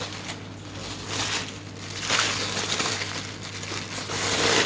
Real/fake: real